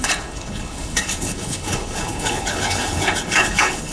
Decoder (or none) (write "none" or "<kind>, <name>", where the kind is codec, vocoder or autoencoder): codec, HILCodec